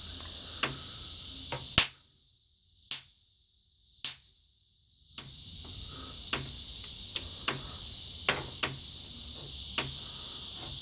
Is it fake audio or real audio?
real